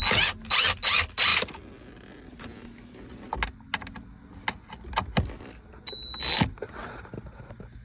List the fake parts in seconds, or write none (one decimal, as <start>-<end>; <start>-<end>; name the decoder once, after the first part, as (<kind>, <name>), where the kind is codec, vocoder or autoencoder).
none